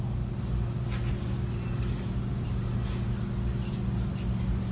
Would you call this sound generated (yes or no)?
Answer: no